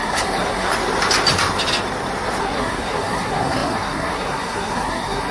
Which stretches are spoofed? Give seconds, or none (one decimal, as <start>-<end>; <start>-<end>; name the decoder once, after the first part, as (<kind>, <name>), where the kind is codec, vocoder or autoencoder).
0.0-0.7 (codec, SNAC); 2.4-5.3